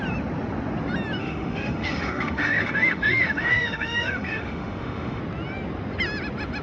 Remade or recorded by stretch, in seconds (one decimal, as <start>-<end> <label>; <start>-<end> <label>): 0.0-1.2 recorded; 1.2-5.2 remade; 5.2-6.6 recorded